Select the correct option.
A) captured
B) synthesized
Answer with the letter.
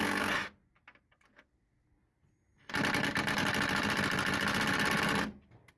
A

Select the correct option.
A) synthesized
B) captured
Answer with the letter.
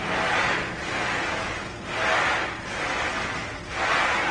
B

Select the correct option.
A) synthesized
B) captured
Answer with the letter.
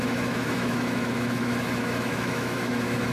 A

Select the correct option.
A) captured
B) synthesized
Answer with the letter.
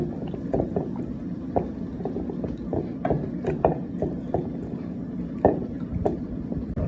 A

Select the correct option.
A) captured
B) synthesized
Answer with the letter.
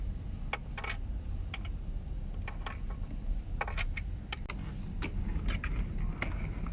A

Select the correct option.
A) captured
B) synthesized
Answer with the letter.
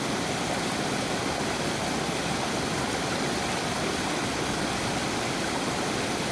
A